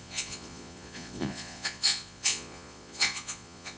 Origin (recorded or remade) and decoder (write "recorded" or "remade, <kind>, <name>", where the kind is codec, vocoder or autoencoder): remade, vocoder, Vocos